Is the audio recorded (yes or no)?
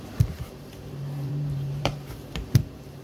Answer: no